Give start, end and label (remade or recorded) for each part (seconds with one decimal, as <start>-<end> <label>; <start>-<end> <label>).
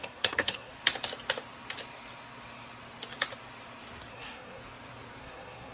0.0-0.7 remade; 0.7-4.1 recorded; 4.1-4.6 remade; 4.6-5.2 recorded; 5.2-5.7 remade